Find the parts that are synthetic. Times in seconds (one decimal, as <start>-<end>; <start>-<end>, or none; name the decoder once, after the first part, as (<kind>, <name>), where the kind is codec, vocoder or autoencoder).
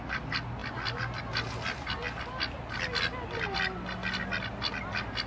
0.6-1.2 (vocoder, BigVGAN v2)